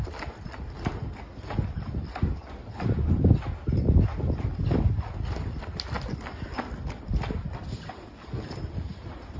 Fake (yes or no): no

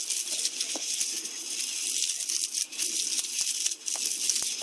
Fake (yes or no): no